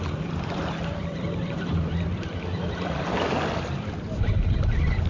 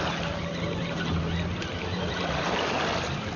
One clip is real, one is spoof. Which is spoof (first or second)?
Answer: first